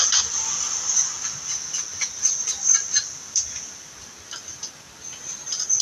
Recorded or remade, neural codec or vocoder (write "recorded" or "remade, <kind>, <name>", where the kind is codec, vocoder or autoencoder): recorded